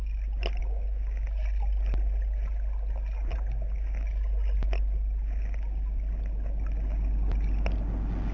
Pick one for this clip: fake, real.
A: real